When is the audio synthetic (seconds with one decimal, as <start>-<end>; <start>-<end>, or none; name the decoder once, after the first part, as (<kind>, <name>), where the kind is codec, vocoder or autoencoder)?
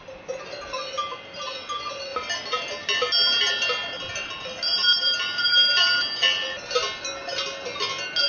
none